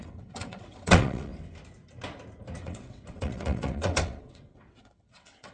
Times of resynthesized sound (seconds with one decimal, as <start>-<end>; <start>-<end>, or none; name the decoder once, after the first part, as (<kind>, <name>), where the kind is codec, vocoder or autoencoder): 0.0-1.3 (vocoder, WaveNeXt); 2.6-5.5